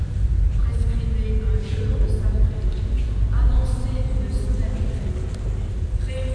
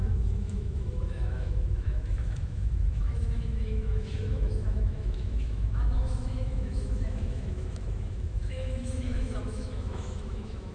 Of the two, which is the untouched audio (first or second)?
first